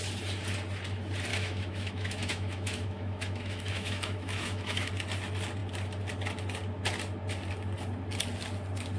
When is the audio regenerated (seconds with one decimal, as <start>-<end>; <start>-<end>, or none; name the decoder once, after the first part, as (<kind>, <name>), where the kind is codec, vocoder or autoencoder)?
1.3-4.9 (autoencoder, DAC-VAE)